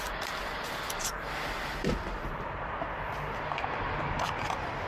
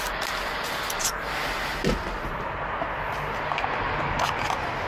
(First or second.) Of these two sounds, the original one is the second